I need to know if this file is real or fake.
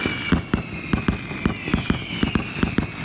real